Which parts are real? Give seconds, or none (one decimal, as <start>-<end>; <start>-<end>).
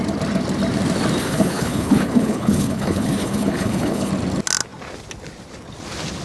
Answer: 0.0-1.2; 4.1-6.2